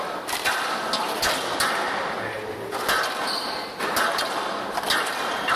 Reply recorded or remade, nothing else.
recorded